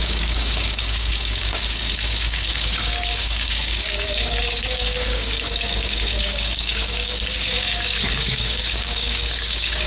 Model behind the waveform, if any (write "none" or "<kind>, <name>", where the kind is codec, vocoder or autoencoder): codec, DAC